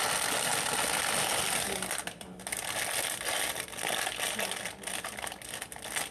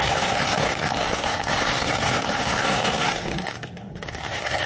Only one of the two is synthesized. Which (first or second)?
second